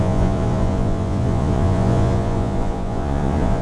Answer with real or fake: fake